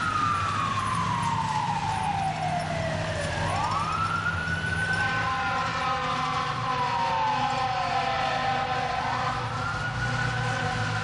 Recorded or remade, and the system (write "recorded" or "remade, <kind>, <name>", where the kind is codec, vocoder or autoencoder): recorded